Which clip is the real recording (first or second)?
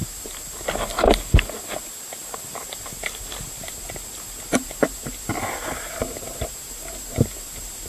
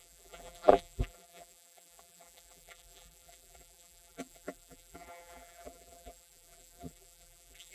first